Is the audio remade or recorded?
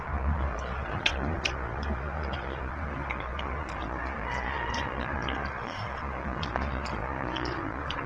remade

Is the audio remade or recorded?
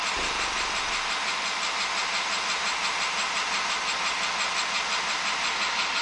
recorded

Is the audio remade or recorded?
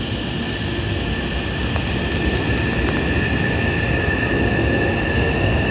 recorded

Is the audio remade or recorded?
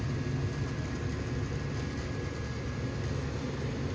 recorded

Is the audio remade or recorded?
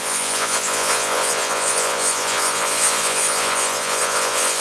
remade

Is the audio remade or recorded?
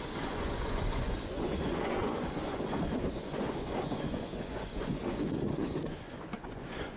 remade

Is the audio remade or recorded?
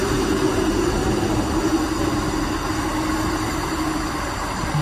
recorded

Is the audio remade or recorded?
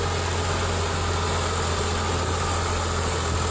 recorded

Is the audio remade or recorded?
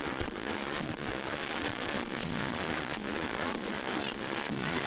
remade